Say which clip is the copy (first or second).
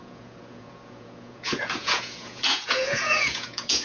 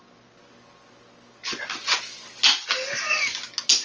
first